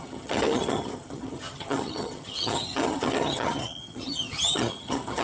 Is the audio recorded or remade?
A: remade